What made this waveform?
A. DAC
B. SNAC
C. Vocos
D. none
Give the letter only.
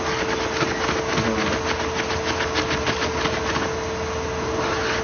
D